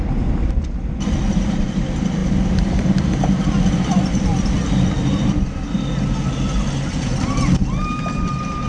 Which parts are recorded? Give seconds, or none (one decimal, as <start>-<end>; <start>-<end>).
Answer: 2.2-3.0; 4.3-8.7